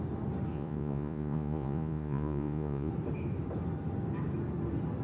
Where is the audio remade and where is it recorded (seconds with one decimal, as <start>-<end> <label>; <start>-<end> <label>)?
0.0-0.5 recorded; 0.5-2.9 remade; 2.9-5.0 recorded